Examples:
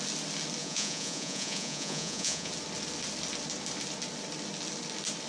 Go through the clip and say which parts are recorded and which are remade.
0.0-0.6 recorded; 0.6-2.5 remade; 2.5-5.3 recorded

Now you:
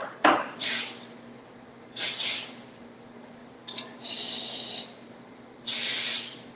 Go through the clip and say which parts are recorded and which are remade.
0.0-6.6 recorded

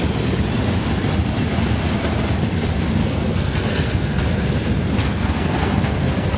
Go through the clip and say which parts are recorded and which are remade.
0.0-3.0 recorded; 3.0-4.5 remade; 4.5-5.0 recorded; 5.0-6.4 remade